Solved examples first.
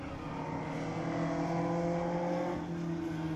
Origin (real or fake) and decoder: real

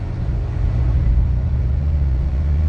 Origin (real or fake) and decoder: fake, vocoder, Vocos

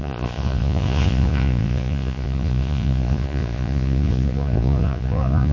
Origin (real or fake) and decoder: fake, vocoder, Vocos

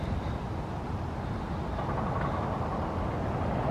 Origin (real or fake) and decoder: real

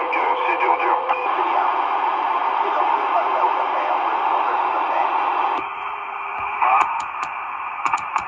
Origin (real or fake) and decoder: fake, vocoder, Vocos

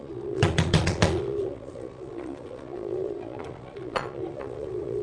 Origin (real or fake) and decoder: fake, vocoder, Vocos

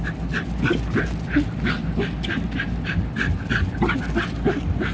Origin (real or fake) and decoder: real